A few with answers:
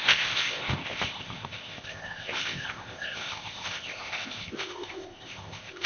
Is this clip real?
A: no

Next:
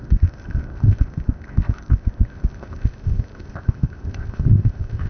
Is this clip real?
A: no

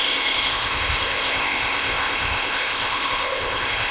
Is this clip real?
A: no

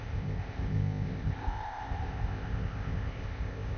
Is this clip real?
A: no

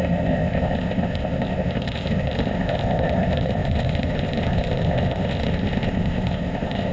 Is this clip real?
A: no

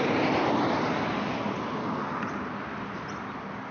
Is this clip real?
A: yes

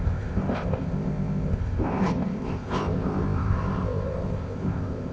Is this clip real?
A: no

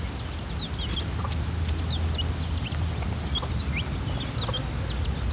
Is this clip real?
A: yes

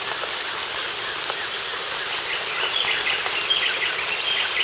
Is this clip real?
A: yes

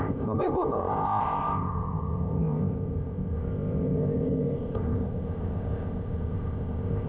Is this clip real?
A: no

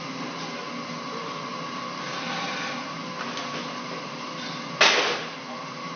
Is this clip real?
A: yes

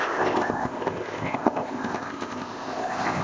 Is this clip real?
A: no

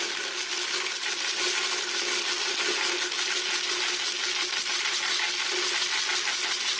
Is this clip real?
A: yes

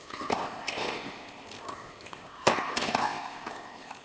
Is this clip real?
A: no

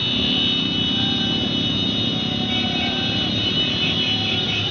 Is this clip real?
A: yes